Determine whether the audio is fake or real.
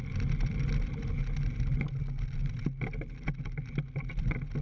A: real